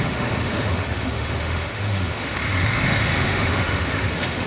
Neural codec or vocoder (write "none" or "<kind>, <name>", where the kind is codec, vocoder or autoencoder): autoencoder, DAC-VAE